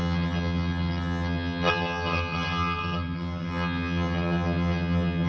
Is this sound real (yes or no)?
no